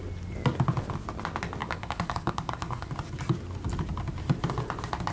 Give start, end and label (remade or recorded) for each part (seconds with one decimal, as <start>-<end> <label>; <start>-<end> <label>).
0.0-1.6 recorded; 1.6-2.9 remade; 2.9-5.1 recorded